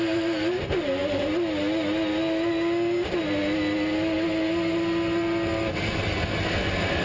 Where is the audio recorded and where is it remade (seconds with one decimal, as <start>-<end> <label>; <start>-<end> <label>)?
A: 0.0-7.0 recorded